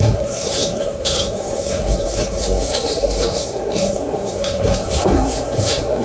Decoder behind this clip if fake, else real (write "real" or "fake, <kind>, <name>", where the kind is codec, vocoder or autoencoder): fake, codec, SNAC